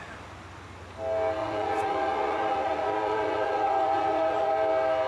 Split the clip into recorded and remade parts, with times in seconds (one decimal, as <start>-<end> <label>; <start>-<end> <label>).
0.0-1.4 recorded; 1.4-4.5 remade; 4.5-5.1 recorded